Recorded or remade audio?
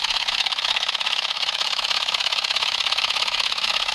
remade